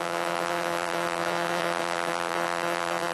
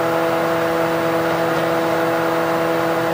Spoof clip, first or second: first